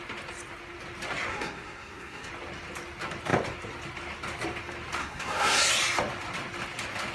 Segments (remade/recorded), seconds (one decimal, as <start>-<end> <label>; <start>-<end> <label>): 0.0-1.3 recorded; 1.3-2.3 remade; 2.3-5.0 recorded; 5.0-5.7 remade; 5.7-7.1 recorded